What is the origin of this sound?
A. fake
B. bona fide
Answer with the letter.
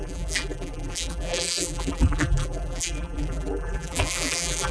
A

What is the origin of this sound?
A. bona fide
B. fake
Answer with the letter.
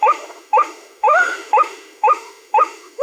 B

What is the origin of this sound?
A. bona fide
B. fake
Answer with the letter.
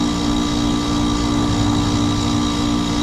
A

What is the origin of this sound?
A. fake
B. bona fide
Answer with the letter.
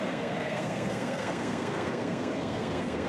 A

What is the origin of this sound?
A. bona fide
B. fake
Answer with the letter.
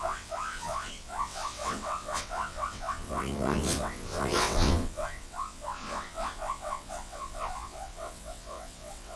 B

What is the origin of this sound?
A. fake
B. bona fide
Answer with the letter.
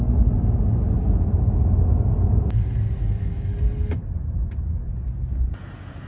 B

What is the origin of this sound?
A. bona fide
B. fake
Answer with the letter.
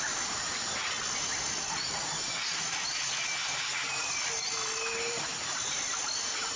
A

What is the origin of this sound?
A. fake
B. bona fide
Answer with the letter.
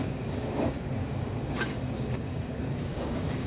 A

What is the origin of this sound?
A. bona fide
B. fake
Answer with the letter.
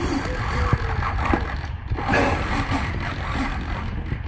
A